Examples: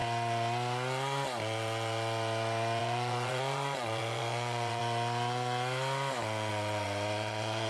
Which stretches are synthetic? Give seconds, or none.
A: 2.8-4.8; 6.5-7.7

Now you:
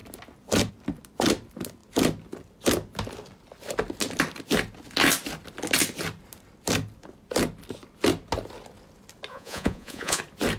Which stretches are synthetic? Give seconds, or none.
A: 9.3-10.2

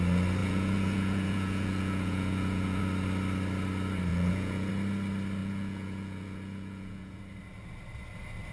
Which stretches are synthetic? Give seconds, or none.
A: 0.4-2.8; 4.1-4.7; 5.4-7.2

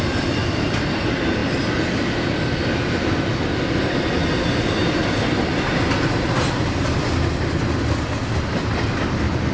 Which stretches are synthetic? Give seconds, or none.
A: none

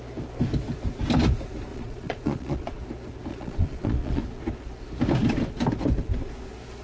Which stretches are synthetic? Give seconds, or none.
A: 1.7-2.8; 3.3-4.2

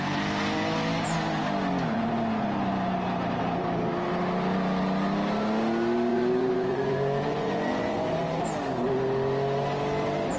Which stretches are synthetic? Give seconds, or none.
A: 6.1-8.4

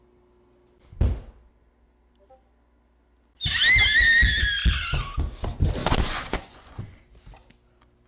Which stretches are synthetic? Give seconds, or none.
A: 5.8-7.0